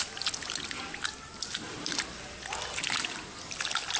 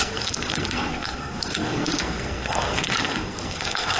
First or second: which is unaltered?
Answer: first